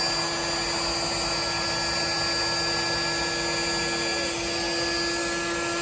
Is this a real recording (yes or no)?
yes